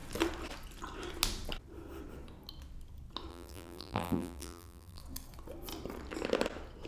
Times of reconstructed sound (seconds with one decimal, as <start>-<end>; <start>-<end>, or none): 3.3-5.0